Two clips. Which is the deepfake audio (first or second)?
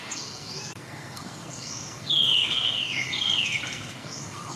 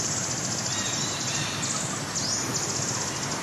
first